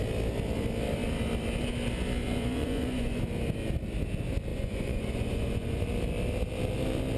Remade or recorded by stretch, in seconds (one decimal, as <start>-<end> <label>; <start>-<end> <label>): 0.0-2.2 recorded; 2.2-3.2 remade; 3.2-4.5 recorded; 4.5-5.8 remade; 5.8-7.2 recorded